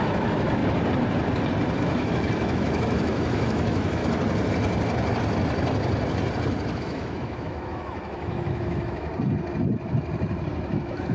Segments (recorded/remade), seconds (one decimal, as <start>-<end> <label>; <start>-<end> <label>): 0.0-0.6 remade; 0.6-1.8 recorded; 1.8-4.0 remade; 4.0-6.8 recorded; 6.8-9.1 remade; 9.1-10.7 recorded; 10.7-11.1 remade